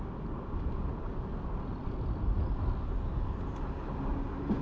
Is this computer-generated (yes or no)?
no